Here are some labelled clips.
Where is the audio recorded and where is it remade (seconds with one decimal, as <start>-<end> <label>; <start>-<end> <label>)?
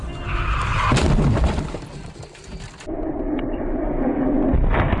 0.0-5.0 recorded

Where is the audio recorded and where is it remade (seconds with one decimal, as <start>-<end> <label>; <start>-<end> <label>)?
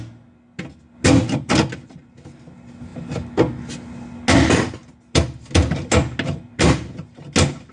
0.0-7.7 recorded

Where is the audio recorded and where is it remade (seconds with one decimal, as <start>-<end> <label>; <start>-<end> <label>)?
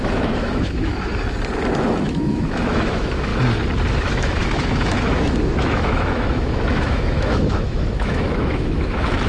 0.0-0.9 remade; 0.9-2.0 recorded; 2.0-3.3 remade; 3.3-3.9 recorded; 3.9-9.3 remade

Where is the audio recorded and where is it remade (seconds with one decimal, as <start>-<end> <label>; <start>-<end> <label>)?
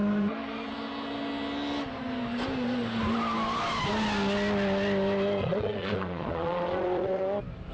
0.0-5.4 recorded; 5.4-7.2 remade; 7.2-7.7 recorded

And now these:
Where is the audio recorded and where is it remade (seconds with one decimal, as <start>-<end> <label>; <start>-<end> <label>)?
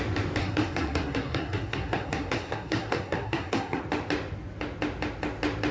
0.0-0.4 recorded; 0.4-3.8 remade; 3.8-5.7 recorded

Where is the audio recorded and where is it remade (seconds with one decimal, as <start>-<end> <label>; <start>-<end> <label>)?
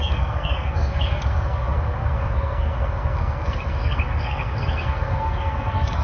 0.0-6.0 remade